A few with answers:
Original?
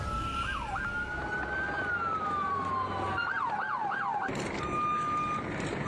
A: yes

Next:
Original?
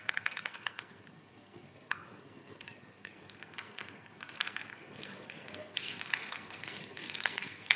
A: no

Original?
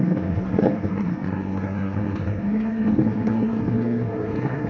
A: no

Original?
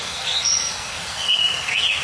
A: no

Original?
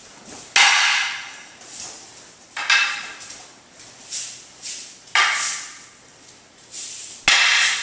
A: yes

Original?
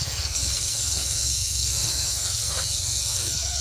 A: no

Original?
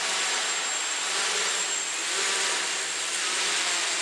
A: yes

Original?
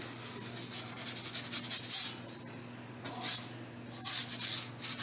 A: yes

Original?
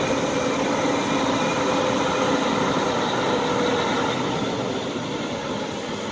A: yes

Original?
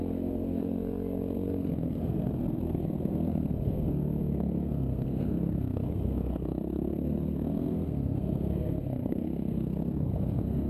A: no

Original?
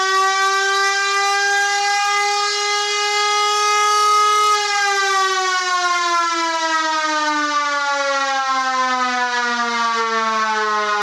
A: yes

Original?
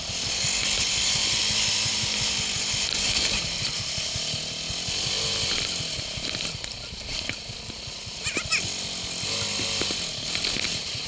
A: yes